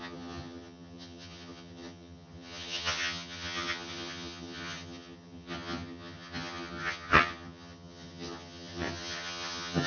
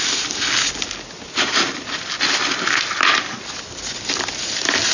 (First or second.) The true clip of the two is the second